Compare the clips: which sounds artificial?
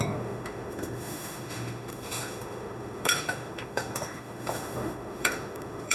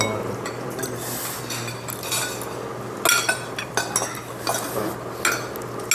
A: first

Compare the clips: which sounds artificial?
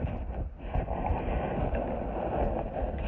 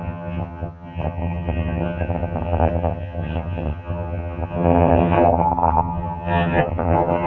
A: second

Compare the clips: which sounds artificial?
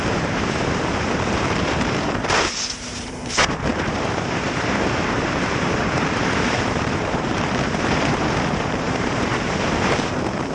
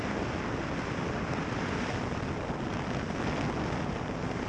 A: first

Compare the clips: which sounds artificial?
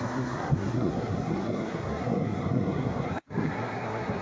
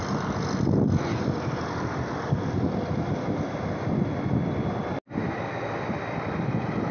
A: first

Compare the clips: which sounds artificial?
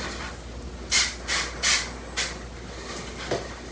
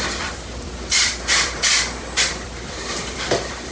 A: second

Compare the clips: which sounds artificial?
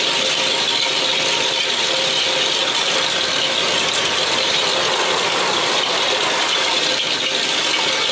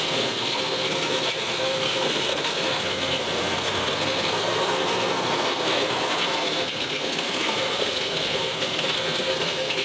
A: second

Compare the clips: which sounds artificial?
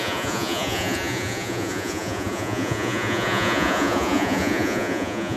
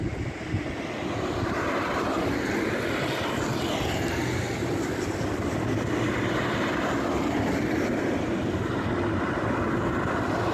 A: first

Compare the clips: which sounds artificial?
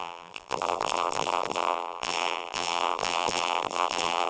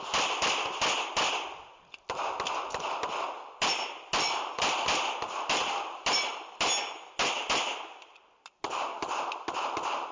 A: first